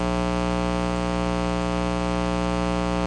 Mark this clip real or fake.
real